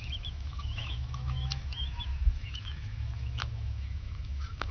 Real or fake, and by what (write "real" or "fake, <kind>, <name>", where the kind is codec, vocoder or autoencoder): fake, autoencoder, DAC-VAE